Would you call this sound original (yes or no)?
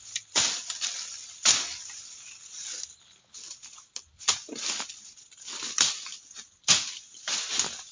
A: yes